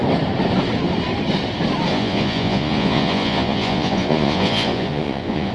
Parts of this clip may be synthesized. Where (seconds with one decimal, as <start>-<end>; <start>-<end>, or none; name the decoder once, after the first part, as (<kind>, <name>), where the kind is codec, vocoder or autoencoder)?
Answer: 1.9-5.5 (vocoder, Vocos)